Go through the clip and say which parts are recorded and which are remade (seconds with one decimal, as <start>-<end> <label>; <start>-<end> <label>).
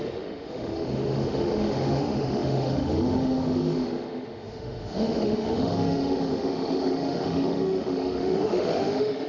0.0-9.3 remade